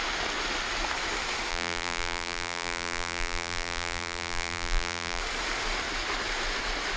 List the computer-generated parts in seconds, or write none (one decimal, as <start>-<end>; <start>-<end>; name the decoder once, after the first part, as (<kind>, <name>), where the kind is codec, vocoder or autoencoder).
1.5-5.2 (vocoder, BigVGAN v2)